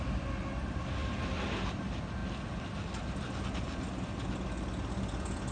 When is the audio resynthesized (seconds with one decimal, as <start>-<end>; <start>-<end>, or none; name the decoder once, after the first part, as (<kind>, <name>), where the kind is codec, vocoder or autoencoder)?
none

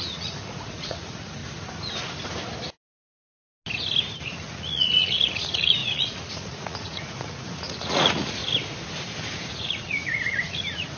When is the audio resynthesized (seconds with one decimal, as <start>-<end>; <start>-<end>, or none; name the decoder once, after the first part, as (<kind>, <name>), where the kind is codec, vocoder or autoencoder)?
0.0-1.4 (vocoder, Vocos); 4.2-8.4; 9.5-11.0

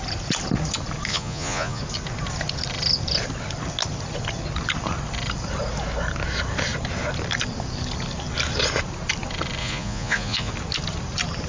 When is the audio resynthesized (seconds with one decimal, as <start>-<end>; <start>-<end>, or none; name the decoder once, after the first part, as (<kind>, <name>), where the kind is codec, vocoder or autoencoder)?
1.1-1.8 (vocoder, Vocos); 9.6-10.5

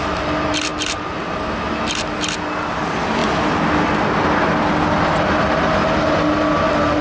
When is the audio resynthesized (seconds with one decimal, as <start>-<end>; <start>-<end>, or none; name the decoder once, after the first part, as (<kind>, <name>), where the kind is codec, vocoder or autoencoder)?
none

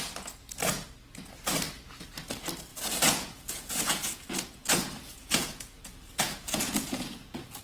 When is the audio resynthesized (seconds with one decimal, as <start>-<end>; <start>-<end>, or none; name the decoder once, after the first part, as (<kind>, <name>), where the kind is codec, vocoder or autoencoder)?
2.7-7.6 (vocoder, Vocos)